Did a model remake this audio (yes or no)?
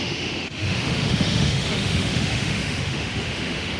yes